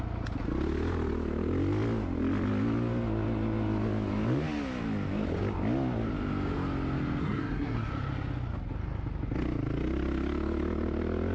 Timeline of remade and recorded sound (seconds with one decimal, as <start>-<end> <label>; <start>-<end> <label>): 0.0-7.2 recorded; 7.2-7.9 remade; 7.9-11.3 recorded